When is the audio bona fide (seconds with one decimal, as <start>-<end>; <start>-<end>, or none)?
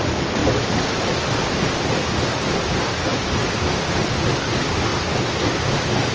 0.0-6.1